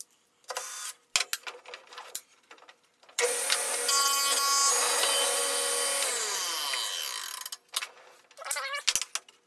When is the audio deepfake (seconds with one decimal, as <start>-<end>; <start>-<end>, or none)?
2.0-3.7